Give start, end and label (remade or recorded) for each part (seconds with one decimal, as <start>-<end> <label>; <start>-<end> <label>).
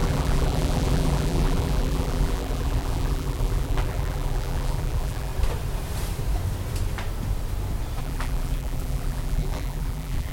0.0-5.3 remade; 5.3-8.0 recorded; 8.0-10.3 remade